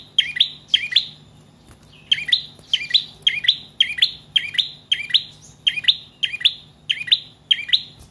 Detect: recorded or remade recorded